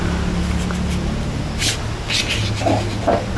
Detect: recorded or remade recorded